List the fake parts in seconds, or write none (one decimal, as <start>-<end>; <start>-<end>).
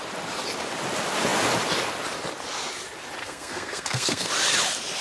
3.2-4.3